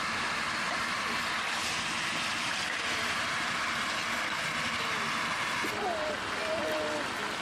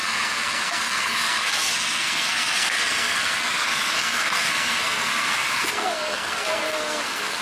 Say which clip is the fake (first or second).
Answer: second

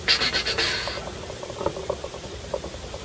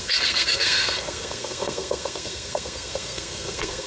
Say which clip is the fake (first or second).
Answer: second